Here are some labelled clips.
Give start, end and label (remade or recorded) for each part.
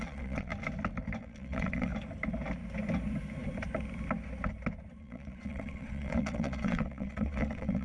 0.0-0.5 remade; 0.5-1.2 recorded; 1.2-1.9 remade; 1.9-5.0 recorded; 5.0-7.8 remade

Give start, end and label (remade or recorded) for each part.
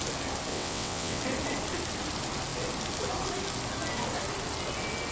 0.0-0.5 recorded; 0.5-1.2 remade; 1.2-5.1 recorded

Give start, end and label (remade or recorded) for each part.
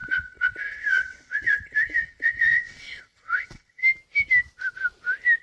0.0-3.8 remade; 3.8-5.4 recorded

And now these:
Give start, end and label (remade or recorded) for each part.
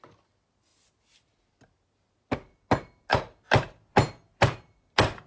0.0-5.3 recorded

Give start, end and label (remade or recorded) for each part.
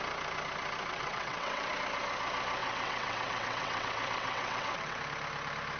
0.0-0.9 recorded; 0.9-1.7 remade; 1.7-2.6 recorded; 2.6-5.0 remade; 5.0-5.8 recorded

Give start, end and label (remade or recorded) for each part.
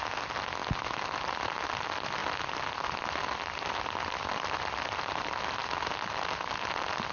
0.0-7.1 recorded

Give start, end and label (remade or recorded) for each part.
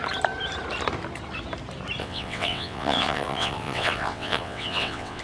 0.0-2.0 recorded; 2.0-5.2 remade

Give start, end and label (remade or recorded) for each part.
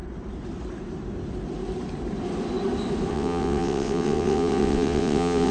0.0-3.1 recorded; 3.1-5.5 remade